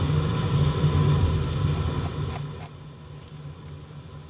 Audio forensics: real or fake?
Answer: real